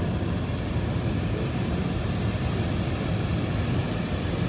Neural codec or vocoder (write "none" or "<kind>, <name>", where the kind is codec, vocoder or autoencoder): none